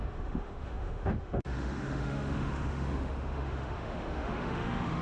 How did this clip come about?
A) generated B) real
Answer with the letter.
A